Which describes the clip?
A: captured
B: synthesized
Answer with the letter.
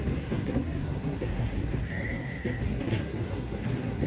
B